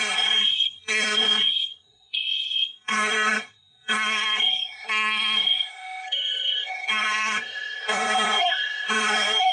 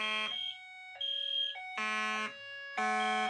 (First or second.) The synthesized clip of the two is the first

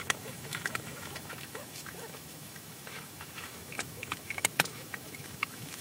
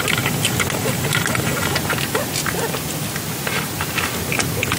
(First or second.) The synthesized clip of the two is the first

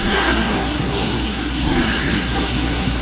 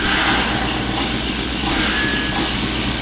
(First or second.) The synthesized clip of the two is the first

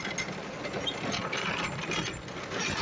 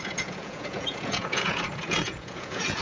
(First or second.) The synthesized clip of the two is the second